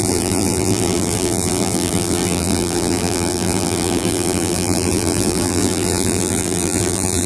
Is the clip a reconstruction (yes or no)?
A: yes